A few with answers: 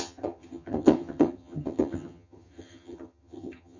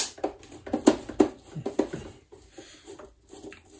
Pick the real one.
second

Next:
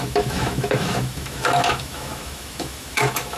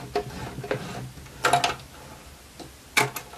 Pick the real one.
second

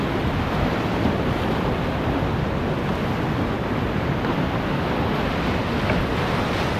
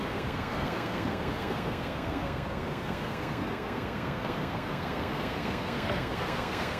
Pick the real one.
first